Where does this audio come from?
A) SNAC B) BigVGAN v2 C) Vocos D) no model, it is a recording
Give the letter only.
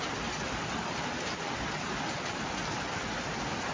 D